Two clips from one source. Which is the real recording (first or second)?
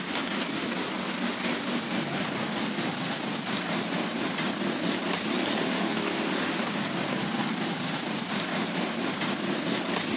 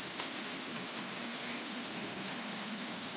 first